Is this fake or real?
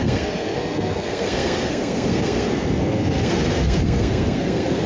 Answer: fake